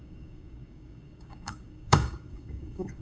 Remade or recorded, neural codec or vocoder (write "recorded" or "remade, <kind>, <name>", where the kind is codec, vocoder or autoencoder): remade, codec, DAC